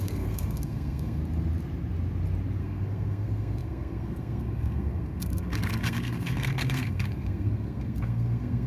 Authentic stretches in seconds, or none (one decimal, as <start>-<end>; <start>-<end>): 1.2-2.6